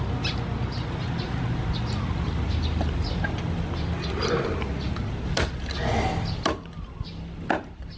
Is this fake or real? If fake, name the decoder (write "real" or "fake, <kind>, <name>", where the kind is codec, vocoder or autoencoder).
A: real